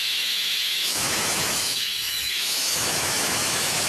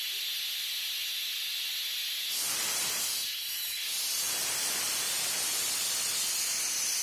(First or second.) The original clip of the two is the second